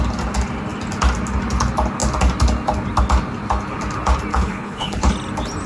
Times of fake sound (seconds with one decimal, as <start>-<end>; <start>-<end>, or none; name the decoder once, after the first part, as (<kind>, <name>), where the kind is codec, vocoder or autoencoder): 4.3-5.1 (codec, HILCodec)

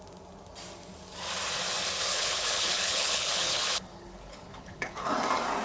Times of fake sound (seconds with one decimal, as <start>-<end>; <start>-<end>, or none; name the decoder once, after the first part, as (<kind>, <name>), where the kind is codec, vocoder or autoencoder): 2.1-5.1 (codec, HILCodec)